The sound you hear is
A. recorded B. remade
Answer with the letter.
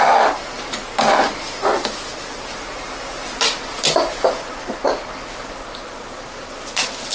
A